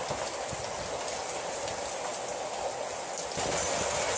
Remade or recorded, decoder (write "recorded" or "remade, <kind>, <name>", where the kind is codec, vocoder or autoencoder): recorded